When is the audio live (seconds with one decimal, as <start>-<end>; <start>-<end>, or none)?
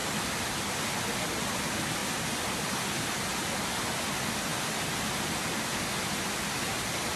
0.0-7.2